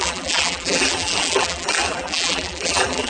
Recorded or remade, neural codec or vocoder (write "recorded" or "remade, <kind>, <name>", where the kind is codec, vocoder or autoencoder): remade, vocoder, BigVGAN v2